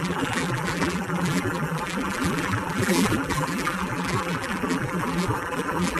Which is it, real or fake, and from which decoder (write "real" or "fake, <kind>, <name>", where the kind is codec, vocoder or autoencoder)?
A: fake, vocoder, BigVGAN v2